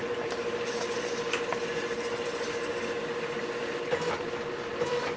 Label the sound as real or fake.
fake